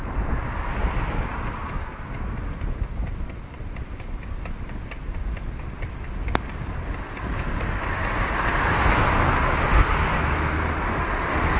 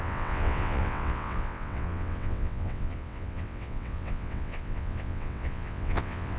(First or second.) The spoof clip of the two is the second